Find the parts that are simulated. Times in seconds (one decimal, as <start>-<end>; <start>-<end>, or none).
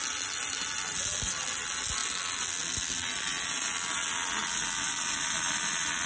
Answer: none